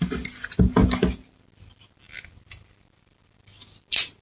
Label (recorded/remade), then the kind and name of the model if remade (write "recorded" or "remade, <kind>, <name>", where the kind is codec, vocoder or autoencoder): recorded